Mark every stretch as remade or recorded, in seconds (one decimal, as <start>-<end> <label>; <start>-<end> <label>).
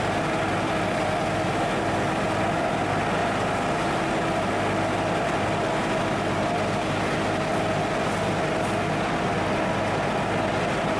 0.0-11.0 recorded